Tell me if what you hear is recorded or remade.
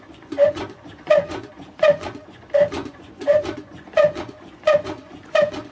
remade